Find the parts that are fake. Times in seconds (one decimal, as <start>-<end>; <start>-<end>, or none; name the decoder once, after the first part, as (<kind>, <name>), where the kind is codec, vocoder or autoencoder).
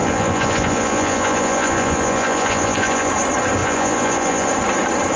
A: 0.0-3.1 (vocoder, Vocos); 3.6-4.5